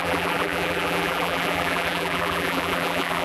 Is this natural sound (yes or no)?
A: no